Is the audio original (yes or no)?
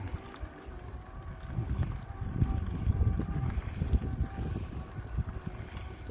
yes